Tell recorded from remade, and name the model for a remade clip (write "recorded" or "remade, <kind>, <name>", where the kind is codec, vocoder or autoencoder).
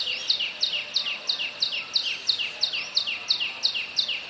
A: recorded